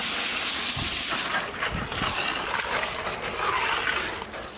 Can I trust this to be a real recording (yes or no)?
yes